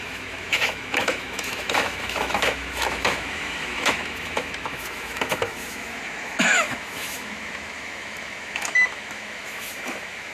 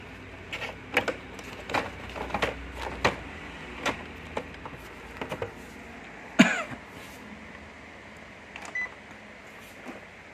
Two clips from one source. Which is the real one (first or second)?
second